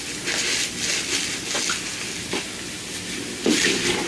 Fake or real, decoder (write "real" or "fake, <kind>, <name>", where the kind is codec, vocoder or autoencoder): real